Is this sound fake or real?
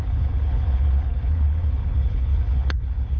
fake